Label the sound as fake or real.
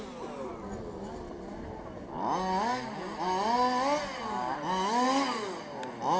real